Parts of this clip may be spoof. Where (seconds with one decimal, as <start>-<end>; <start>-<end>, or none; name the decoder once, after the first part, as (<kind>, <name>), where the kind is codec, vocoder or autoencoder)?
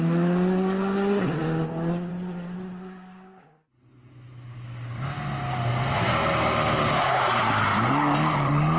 none